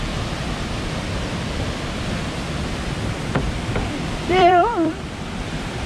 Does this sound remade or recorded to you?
remade